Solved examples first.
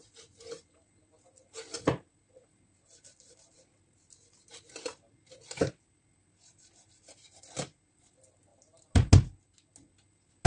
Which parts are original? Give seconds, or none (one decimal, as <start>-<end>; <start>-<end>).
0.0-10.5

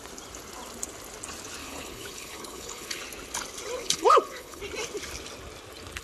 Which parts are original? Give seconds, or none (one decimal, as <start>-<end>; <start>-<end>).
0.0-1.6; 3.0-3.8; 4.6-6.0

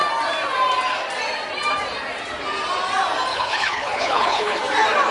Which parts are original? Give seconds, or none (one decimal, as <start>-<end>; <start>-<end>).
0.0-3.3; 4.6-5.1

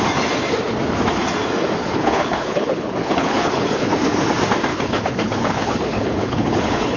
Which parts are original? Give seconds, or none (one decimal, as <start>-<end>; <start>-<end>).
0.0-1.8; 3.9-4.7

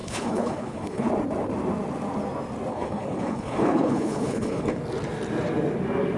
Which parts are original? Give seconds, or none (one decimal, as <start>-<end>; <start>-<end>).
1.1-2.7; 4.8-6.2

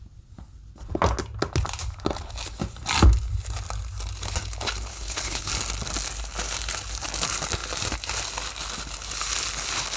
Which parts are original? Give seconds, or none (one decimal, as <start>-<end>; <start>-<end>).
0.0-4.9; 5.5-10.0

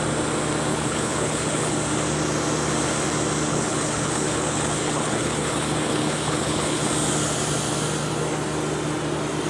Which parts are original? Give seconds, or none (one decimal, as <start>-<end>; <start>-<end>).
0.0-0.7; 1.7-3.5; 6.9-9.5

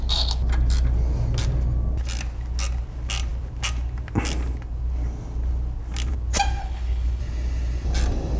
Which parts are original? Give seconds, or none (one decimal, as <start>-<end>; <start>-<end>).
0.0-6.6; 7.2-8.4